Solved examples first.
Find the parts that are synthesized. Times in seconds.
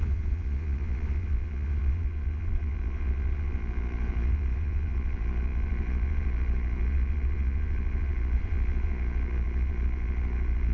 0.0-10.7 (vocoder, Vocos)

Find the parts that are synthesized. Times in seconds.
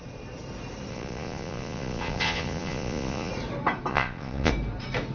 0.9-3.3 (vocoder, Vocos); 3.9-4.5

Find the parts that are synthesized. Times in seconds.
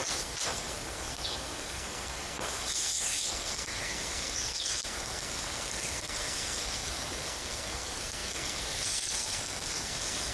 0.0-10.3 (codec, SNAC)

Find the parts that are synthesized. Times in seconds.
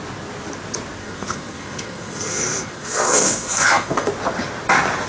1.0-4.1 (codec, SNAC)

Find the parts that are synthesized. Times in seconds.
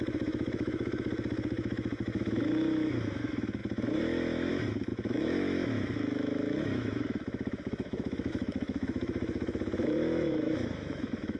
0.0-11.4 (autoencoder, DAC-VAE)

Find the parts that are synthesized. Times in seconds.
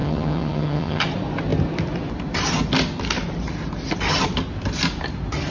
0.0-1.0 (vocoder, HiFi-GAN)